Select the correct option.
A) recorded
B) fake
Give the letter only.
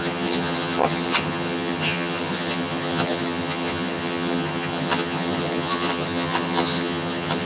B